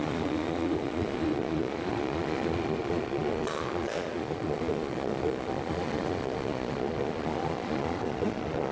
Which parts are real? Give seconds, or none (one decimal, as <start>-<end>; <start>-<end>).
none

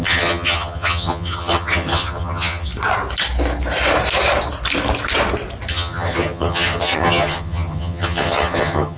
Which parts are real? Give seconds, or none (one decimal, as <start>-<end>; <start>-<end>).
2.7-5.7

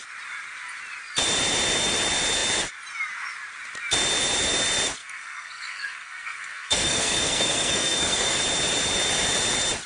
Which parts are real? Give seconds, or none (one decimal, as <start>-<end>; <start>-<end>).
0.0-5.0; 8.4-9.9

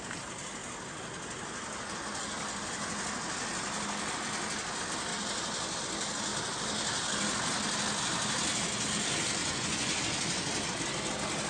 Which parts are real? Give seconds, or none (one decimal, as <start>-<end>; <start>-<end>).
0.0-9.4; 10.0-11.5

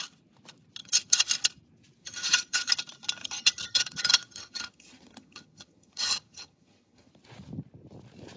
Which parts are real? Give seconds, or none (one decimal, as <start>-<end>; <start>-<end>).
0.0-0.8; 1.3-2.0; 2.7-3.2; 7.1-8.4

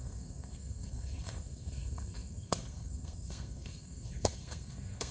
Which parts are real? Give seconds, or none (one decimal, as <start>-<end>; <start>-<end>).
none

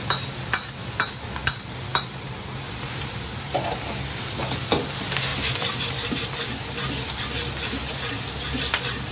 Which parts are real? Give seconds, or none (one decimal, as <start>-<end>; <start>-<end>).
0.0-1.9; 3.9-5.3; 5.9-9.1

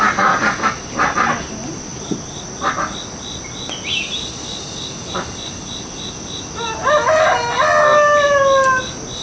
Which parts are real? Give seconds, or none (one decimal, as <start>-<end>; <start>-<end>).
0.0-9.2